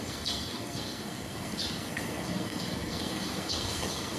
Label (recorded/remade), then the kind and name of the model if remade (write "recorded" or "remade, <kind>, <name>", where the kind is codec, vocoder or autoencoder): remade, codec, SNAC